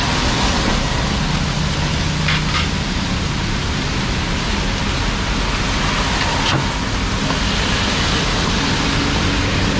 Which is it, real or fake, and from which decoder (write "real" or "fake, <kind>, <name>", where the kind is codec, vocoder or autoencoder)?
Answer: real